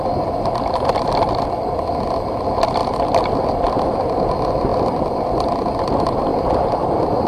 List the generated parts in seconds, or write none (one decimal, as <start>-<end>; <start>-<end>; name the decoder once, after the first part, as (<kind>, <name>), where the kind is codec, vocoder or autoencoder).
4.7-5.5 (vocoder, BigVGAN v2); 6.3-6.8